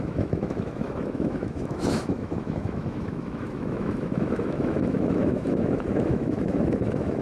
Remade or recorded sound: remade